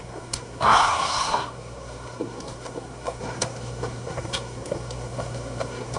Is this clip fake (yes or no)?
yes